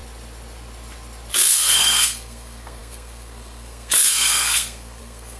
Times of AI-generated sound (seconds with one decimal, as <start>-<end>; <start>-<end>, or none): 1.3-5.4

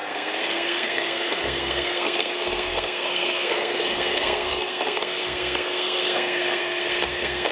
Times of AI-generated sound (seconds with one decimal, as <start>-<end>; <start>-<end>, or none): 0.0-7.5

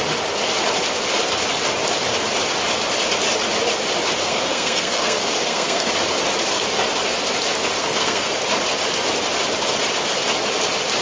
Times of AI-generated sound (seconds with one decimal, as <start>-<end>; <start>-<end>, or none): 4.2-5.9; 7.8-8.3

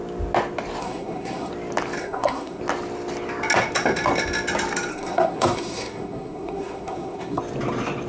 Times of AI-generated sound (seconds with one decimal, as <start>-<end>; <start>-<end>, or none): 0.8-1.5; 2.0-2.6; 4.9-7.4

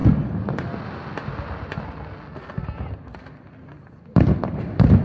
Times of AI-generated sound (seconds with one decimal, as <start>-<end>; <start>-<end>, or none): none

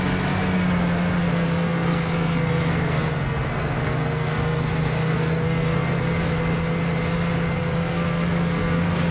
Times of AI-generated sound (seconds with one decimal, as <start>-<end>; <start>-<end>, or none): 1.2-6.1; 7.6-9.1

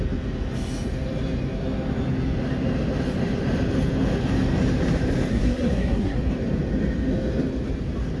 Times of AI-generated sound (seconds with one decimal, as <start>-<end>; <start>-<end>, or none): 5.3-6.2